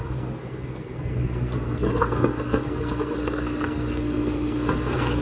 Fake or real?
fake